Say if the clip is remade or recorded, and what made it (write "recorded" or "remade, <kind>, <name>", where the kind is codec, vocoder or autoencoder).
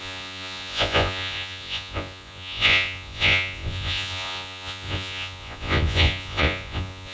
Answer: remade, vocoder, Vocos